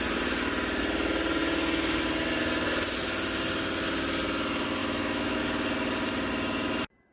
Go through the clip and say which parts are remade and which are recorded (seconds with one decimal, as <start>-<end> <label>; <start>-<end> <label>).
0.0-4.8 recorded; 4.8-5.4 remade; 5.4-7.1 recorded